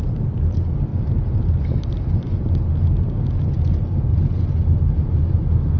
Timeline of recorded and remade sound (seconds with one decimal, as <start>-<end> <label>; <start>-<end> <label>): 0.0-0.9 recorded; 0.9-2.5 remade; 2.5-4.1 recorded; 4.1-5.0 remade; 5.0-5.8 recorded